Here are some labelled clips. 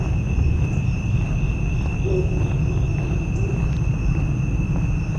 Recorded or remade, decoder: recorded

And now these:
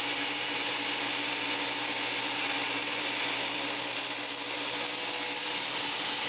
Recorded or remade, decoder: recorded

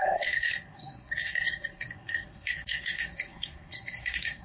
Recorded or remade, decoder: remade, codec, SNAC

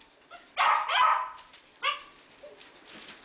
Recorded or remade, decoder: recorded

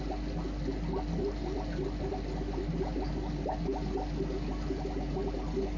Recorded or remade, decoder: recorded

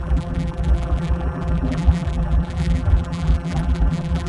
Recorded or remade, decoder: remade, vocoder, BigVGAN v2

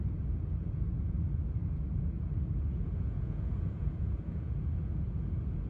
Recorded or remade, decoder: remade, vocoder, Vocos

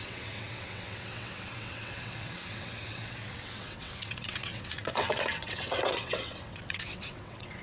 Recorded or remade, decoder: remade, vocoder, WaveNeXt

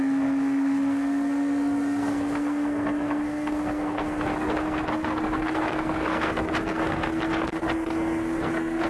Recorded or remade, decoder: remade, codec, SNAC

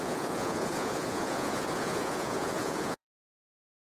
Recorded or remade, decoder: remade, vocoder, Vocos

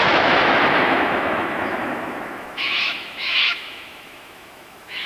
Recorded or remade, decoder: remade, autoencoder, DAC-VAE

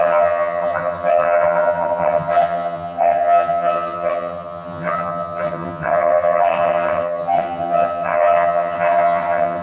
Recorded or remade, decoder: remade, vocoder, HiFi-GAN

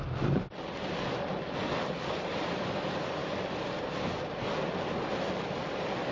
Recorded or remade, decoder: recorded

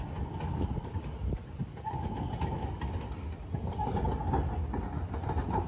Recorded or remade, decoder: recorded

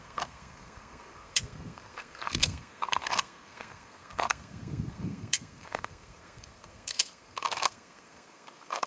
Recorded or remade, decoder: remade, codec, SNAC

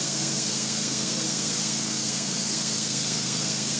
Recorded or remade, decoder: remade, codec, SNAC